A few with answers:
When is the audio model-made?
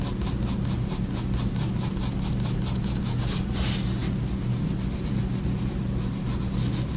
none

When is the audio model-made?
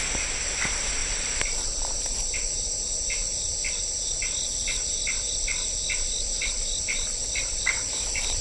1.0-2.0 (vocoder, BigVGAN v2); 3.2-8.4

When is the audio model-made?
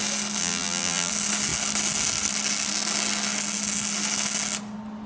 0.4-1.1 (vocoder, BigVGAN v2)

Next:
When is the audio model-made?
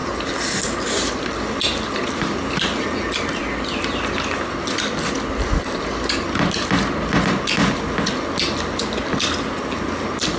0.0-1.4 (vocoder, BigVGAN v2); 3.4-4.9